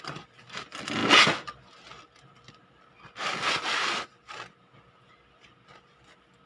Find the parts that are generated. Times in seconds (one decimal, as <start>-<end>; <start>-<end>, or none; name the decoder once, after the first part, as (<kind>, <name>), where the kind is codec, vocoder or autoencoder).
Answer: 0.0-1.0 (vocoder, BigVGAN v2); 4.9-6.5